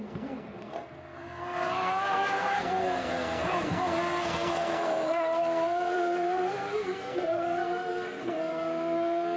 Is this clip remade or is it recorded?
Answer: remade